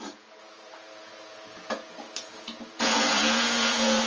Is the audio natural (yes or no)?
no